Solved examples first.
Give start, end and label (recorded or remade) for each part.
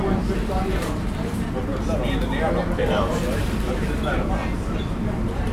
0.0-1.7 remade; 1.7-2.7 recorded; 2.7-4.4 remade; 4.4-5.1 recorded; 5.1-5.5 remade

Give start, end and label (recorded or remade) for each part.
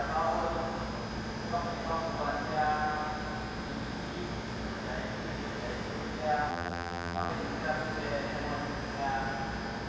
0.0-6.5 recorded; 6.5-7.3 remade; 7.3-9.9 recorded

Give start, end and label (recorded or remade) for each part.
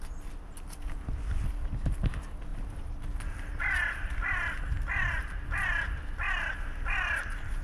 0.0-7.6 recorded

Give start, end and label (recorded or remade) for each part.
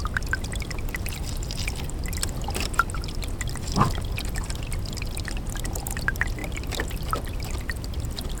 0.0-6.4 recorded; 6.4-7.6 remade; 7.6-8.4 recorded